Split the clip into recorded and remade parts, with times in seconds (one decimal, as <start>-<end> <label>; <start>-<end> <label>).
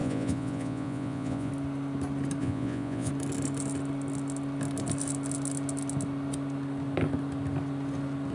0.0-1.5 remade; 1.5-2.4 recorded; 2.4-3.1 remade; 3.1-8.3 recorded